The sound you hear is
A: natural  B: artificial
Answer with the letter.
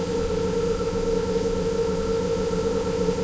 B